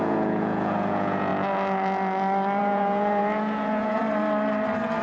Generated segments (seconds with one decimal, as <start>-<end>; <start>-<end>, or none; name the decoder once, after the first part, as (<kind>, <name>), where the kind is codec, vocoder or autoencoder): 0.0-1.3 (vocoder, Vocos); 2.6-4.0